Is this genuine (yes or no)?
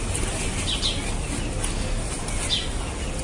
yes